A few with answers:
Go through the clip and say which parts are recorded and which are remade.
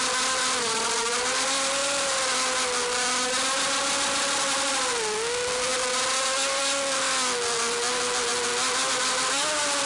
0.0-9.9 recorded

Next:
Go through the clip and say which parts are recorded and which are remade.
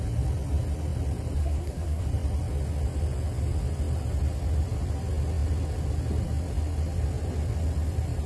0.0-1.4 recorded; 1.4-2.0 remade; 2.0-8.3 recorded